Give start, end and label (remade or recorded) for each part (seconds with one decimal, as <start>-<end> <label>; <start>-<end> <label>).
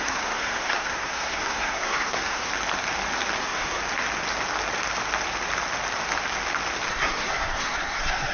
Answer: 0.0-2.5 remade; 2.5-3.4 recorded; 3.4-3.8 remade; 3.8-6.9 recorded; 6.9-8.3 remade